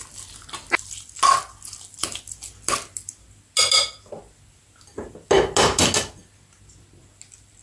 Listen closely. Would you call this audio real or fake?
real